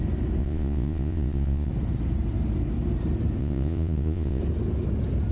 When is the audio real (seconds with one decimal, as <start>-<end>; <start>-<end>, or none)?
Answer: 0.0-0.4; 1.7-3.4; 4.4-5.3